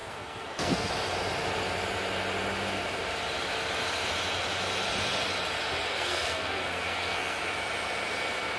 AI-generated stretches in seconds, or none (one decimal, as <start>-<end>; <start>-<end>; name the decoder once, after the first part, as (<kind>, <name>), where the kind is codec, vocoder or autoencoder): 0.0-0.9 (codec, SNAC); 5.9-7.4